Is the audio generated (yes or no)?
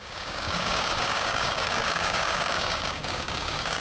yes